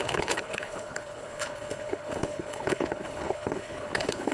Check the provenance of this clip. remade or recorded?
remade